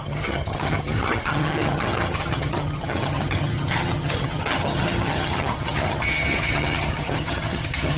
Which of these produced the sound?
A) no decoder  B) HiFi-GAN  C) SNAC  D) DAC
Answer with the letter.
B